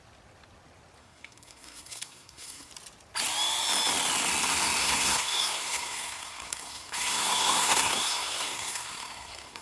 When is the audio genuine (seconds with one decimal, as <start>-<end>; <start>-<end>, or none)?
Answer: 0.0-1.0; 2.7-4.8